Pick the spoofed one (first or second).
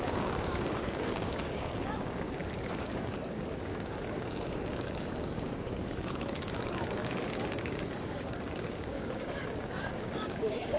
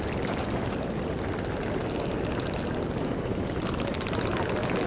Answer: first